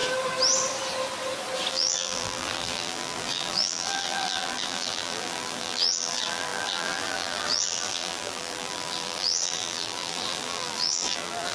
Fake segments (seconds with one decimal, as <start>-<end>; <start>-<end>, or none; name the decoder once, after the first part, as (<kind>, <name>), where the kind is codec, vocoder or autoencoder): 1.7-11.5 (vocoder, BigVGAN v2)